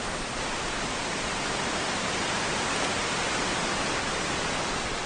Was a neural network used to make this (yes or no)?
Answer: no